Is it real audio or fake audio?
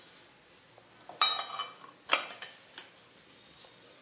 real